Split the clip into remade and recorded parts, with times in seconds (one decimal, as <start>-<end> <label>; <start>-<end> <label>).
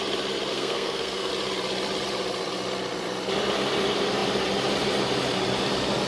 0.0-0.5 recorded; 0.5-1.3 remade; 1.3-6.1 recorded